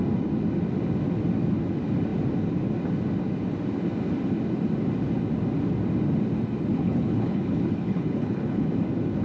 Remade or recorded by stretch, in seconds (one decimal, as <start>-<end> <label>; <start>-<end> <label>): 0.0-6.7 recorded; 6.7-8.7 remade; 8.7-9.2 recorded